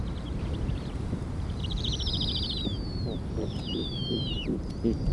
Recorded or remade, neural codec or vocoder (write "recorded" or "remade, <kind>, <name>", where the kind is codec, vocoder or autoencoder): remade, vocoder, BigVGAN v2